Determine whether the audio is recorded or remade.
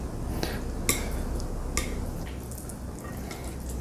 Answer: recorded